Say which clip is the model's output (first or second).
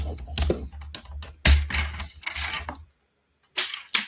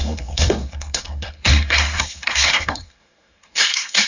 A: second